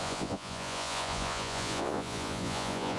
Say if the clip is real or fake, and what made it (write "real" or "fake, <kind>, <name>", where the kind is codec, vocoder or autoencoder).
fake, vocoder, Vocos